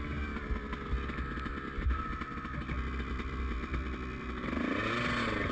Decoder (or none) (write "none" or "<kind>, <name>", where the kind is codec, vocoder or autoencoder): none